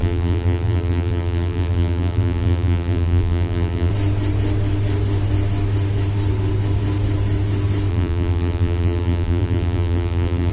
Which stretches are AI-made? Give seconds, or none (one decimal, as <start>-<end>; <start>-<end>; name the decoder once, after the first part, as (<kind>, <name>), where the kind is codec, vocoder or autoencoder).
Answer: 0.0-3.9 (vocoder, BigVGAN v2); 7.9-10.5